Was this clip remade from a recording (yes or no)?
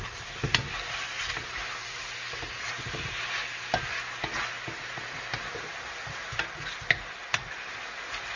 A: no